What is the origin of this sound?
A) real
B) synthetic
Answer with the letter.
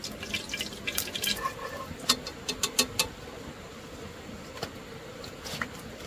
A